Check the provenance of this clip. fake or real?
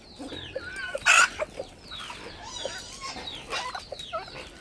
real